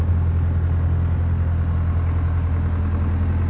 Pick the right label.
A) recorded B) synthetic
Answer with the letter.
A